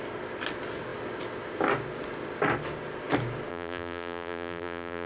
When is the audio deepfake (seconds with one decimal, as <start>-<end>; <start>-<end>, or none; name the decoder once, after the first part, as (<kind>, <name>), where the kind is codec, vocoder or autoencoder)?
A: 3.5-5.1 (vocoder, BigVGAN v2)